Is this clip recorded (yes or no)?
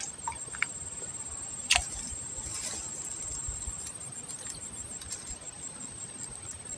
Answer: yes